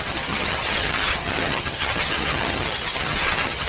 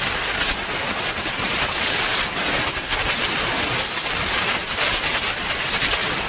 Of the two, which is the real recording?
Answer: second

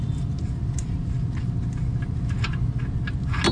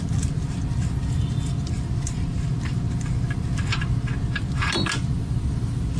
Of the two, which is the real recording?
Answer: first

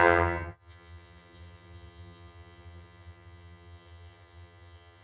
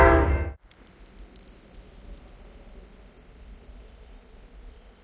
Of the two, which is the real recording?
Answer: second